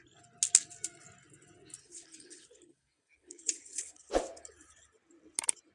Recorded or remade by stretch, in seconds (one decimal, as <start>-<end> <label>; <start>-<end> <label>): 0.0-1.8 recorded; 1.8-4.1 remade; 4.1-5.7 recorded